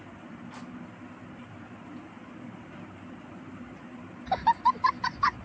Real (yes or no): yes